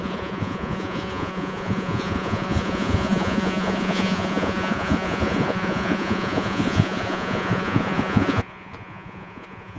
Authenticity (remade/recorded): remade